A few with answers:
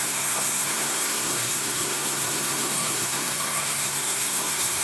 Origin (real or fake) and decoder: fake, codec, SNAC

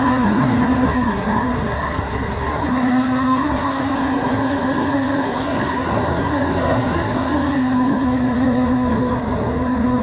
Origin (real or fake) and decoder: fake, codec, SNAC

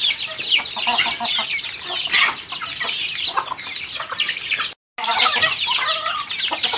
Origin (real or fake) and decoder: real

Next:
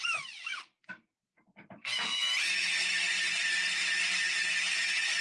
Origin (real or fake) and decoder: real